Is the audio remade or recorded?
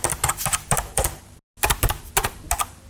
recorded